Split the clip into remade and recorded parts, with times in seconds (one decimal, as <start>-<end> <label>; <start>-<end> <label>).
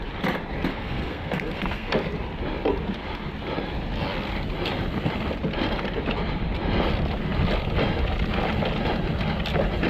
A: 0.0-0.7 recorded; 0.7-1.9 remade; 1.9-9.9 recorded